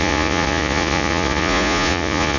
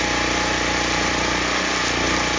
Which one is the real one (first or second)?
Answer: second